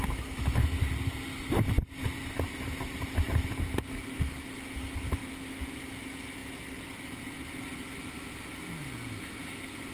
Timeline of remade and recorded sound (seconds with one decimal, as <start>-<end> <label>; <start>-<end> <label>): 0.0-9.9 recorded